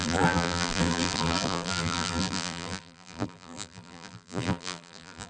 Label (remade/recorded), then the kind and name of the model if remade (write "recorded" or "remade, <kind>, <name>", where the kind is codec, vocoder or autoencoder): remade, vocoder, BigVGAN v2